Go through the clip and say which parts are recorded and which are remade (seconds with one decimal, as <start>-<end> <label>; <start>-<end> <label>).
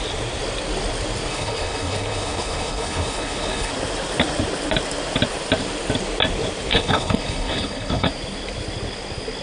0.0-1.3 recorded; 1.3-3.7 remade; 3.7-6.7 recorded; 6.7-8.1 remade; 8.1-9.4 recorded